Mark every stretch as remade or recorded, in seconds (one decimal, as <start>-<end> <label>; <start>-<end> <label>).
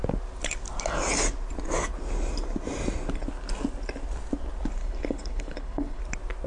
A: 0.0-4.8 recorded; 4.8-6.0 remade; 6.0-6.5 recorded